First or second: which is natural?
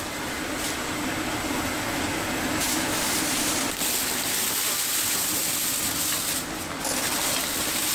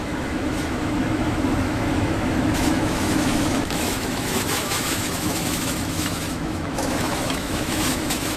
first